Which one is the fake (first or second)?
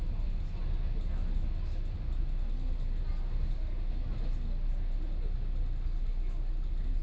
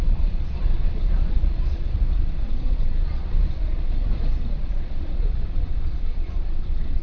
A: second